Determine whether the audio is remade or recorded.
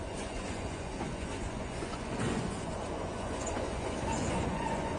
remade